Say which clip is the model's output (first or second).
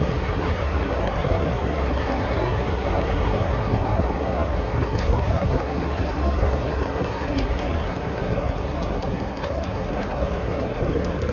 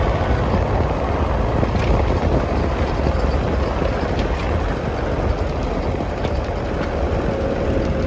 first